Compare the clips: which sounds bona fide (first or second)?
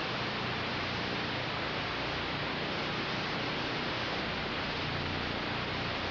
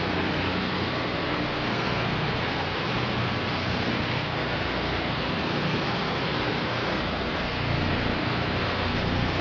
first